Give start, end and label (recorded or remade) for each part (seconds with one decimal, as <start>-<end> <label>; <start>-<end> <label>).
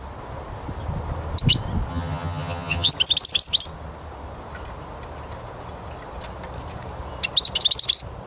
0.0-1.9 recorded; 1.9-2.9 remade; 2.9-8.3 recorded